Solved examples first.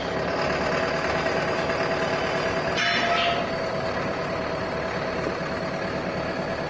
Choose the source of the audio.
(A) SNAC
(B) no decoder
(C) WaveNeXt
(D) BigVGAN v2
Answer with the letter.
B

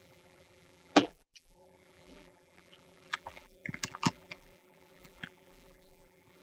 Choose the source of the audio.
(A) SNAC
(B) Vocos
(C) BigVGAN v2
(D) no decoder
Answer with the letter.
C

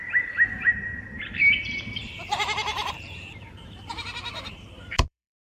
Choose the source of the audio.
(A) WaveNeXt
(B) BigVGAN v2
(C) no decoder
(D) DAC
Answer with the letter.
B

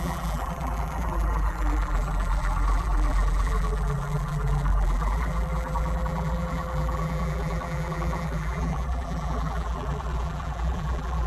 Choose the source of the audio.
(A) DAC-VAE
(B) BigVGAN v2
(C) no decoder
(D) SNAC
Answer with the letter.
B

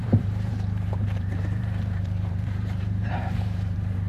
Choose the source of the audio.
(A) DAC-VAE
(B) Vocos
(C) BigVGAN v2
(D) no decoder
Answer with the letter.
C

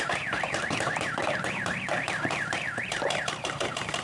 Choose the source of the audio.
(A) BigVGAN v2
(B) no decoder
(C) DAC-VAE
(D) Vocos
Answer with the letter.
A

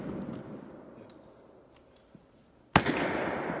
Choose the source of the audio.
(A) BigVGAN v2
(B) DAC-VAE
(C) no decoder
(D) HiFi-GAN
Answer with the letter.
C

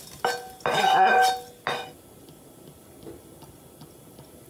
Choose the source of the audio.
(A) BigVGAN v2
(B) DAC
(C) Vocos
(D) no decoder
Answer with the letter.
D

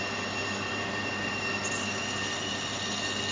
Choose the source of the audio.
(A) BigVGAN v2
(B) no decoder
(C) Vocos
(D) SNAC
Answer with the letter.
B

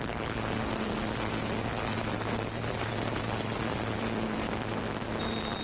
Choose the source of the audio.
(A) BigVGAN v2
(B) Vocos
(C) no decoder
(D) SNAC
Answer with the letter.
C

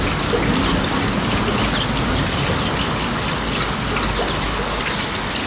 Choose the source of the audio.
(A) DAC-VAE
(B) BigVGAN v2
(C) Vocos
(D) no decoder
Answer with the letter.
D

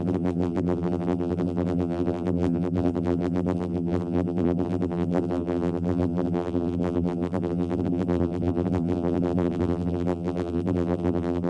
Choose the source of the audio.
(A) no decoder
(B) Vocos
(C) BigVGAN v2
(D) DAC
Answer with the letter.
C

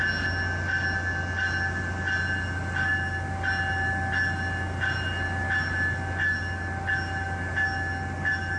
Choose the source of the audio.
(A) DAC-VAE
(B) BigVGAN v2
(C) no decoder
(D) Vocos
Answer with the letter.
C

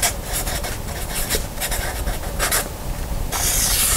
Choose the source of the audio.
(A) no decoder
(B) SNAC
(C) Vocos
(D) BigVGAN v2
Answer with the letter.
D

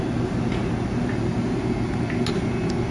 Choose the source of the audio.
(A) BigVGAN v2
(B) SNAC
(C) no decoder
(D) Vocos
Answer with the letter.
C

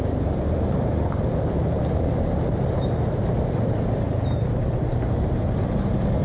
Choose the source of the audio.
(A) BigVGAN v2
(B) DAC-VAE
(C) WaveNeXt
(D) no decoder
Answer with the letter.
A